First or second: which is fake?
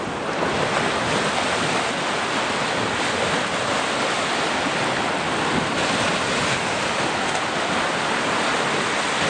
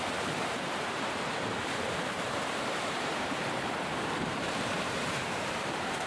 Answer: second